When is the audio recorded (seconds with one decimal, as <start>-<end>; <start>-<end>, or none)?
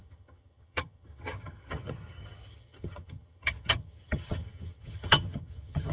none